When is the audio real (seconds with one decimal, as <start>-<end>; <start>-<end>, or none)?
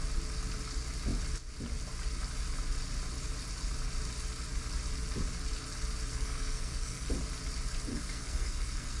0.0-6.1; 7.1-7.9